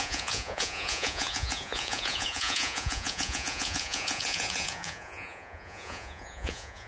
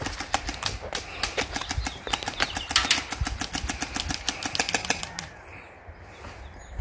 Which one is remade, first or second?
first